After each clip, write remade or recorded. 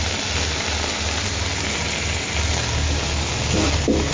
recorded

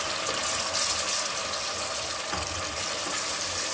recorded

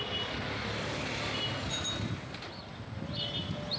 recorded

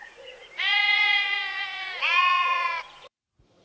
remade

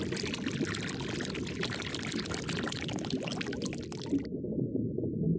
recorded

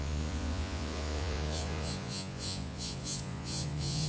remade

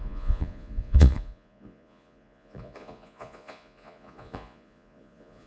remade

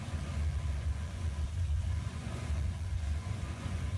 remade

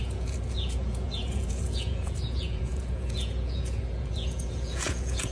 remade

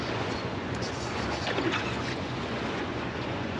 remade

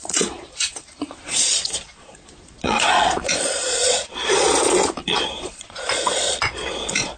remade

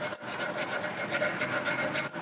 recorded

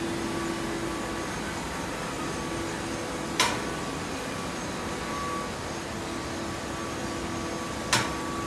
recorded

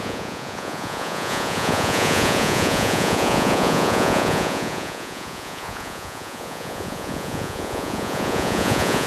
remade